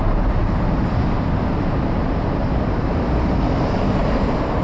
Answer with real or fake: fake